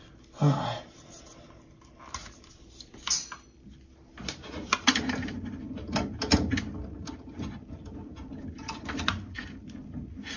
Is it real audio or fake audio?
real